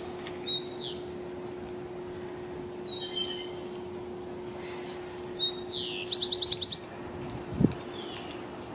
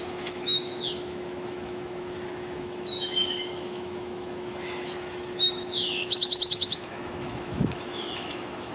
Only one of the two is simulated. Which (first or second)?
second